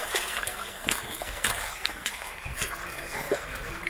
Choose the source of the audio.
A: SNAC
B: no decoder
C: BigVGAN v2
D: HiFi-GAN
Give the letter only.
A